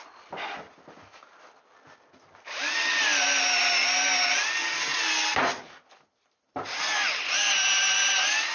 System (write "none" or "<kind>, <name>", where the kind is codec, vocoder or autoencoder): none